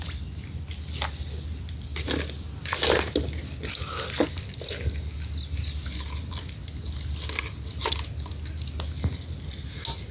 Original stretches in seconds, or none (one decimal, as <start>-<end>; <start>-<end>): 0.0-10.1